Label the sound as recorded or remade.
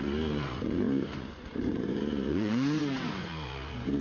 remade